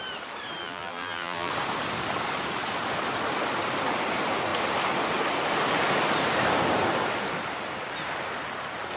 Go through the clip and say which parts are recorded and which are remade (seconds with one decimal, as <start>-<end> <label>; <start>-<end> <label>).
0.0-0.6 recorded; 0.6-1.5 remade; 1.5-9.0 recorded